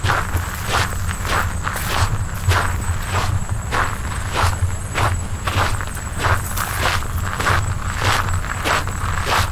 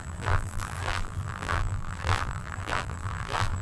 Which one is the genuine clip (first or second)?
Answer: first